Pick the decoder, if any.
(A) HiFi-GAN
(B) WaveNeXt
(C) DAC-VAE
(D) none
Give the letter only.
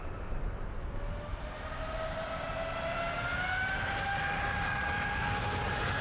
D